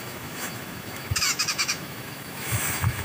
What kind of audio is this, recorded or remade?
remade